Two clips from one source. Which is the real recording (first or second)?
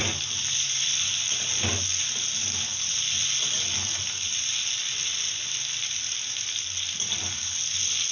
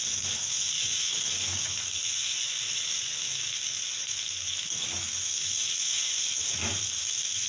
first